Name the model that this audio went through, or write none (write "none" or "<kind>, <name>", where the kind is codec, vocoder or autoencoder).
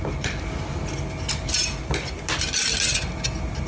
none